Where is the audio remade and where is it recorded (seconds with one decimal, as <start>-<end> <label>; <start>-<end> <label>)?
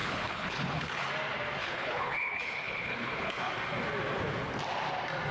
0.0-1.1 remade; 1.1-1.6 recorded; 1.6-3.5 remade; 3.5-5.3 recorded